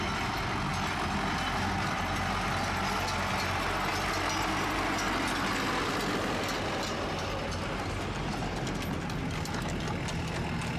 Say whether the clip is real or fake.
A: real